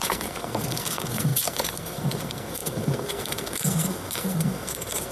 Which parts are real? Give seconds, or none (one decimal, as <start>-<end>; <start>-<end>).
none